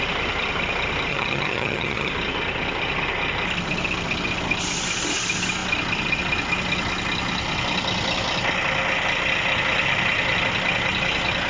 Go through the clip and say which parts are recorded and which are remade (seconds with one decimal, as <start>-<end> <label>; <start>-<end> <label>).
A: 0.0-1.1 recorded; 1.1-2.1 remade; 2.1-11.5 recorded

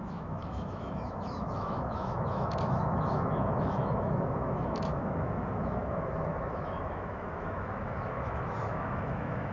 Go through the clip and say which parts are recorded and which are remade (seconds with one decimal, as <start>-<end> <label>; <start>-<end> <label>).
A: 0.0-9.5 remade